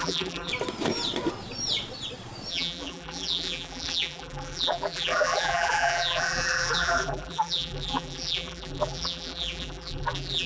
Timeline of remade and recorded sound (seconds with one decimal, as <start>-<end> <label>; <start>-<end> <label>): 0.0-0.5 remade; 0.5-2.5 recorded; 2.5-10.5 remade